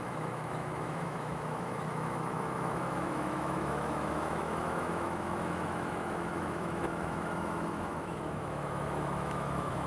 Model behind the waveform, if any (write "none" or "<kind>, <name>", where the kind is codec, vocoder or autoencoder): autoencoder, DAC-VAE